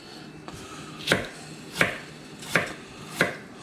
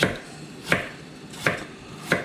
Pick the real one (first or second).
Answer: first